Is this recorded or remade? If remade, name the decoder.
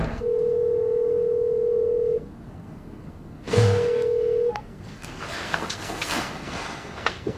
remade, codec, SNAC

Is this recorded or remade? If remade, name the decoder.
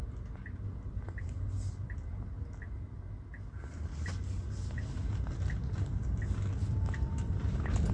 recorded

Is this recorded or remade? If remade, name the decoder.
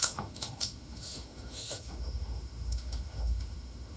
remade, autoencoder, DAC-VAE